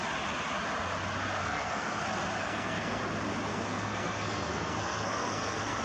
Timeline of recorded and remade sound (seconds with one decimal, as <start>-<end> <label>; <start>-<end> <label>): 0.0-1.4 recorded; 1.4-2.0 remade; 2.0-2.4 recorded; 2.4-3.0 remade; 3.0-3.5 recorded; 3.5-5.8 remade